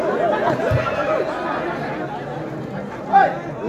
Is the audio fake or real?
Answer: real